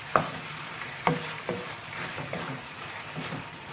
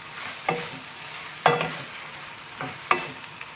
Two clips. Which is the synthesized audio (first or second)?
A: first